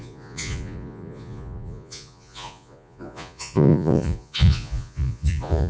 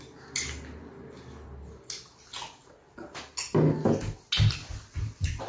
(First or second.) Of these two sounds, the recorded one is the second